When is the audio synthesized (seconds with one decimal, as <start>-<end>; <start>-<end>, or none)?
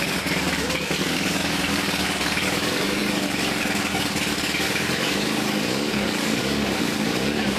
0.0-7.6